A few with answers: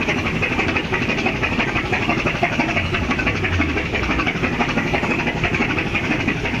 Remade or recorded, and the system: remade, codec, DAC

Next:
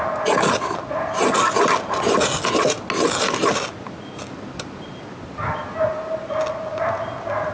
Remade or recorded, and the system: recorded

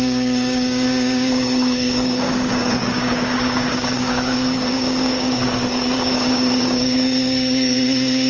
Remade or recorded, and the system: remade, codec, DAC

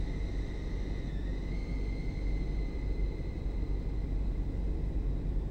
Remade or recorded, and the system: recorded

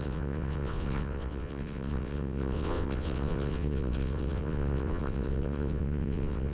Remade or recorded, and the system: remade, vocoder, WaveNeXt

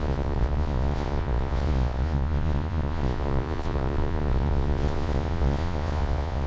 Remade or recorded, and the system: remade, vocoder, Vocos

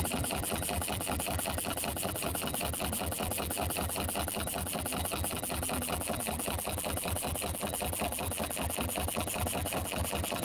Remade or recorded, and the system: remade, vocoder, BigVGAN v2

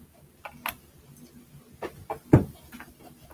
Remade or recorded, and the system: recorded